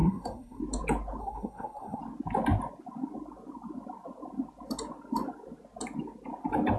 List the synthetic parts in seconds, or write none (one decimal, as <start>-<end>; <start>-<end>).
0.0-0.6; 1.2-2.0